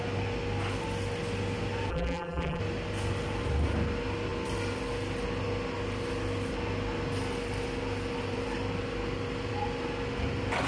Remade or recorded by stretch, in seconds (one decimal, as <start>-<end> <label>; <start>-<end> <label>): 0.0-1.9 recorded; 1.9-2.6 remade; 2.6-10.7 recorded